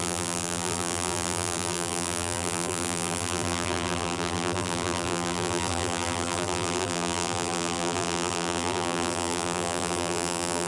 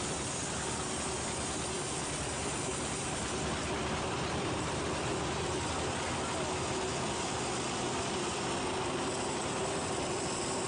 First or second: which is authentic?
second